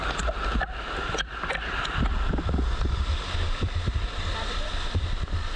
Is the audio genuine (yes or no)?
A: yes